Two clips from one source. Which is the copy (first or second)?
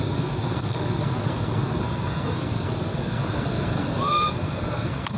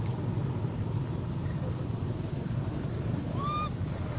first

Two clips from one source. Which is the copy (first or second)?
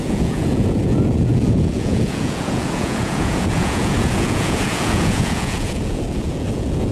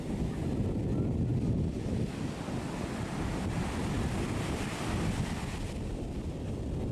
first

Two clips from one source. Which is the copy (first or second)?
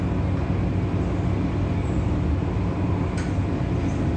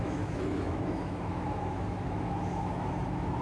second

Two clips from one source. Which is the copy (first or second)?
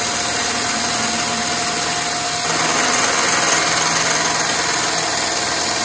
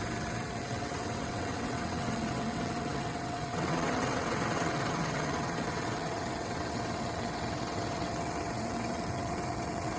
second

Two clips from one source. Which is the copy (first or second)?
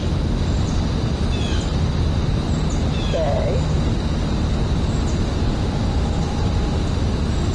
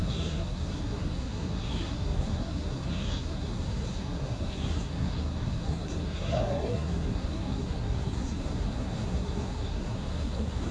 second